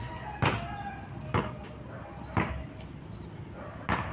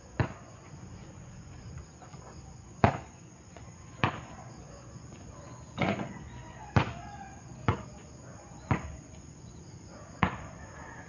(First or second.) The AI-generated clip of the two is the second